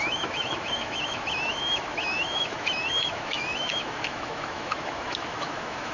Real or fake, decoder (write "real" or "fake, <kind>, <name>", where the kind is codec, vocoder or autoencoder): fake, autoencoder, DAC-VAE